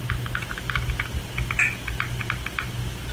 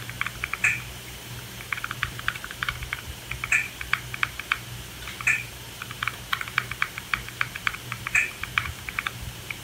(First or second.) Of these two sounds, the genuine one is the first